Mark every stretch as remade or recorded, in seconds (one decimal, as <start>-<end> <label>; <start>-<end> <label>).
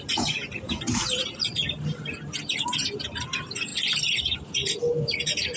0.0-3.7 remade; 3.7-4.2 recorded; 4.2-5.6 remade